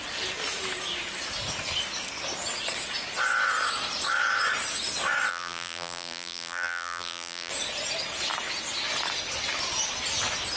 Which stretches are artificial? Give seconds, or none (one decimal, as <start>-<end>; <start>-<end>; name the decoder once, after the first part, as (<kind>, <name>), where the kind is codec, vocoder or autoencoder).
5.3-7.5 (vocoder, BigVGAN v2)